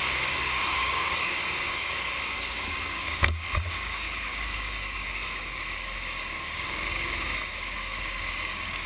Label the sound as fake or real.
fake